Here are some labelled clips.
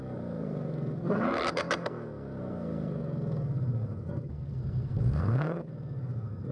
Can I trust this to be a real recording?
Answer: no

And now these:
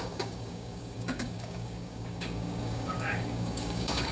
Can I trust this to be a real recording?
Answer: no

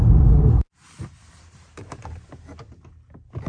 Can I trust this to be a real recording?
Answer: yes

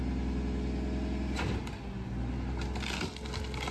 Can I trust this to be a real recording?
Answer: yes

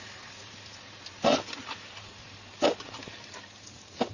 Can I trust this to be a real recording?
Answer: yes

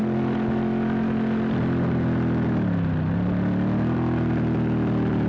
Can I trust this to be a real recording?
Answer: yes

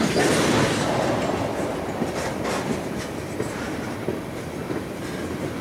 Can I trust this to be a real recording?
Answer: yes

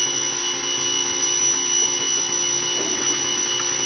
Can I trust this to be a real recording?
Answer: yes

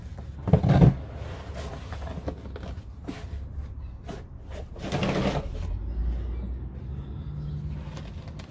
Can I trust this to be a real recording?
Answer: yes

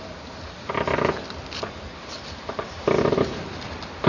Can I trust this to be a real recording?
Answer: no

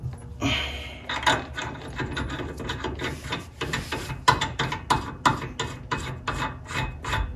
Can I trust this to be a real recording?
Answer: yes